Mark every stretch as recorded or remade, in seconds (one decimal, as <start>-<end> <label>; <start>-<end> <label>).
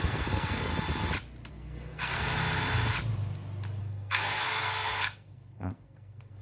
0.0-0.7 remade; 0.7-1.5 recorded; 1.5-2.4 remade; 2.4-3.8 recorded; 3.8-6.4 remade